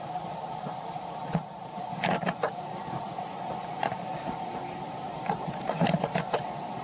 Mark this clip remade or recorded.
remade